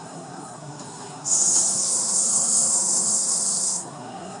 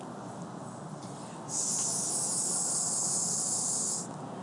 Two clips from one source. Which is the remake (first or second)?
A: first